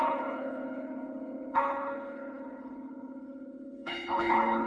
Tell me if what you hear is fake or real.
fake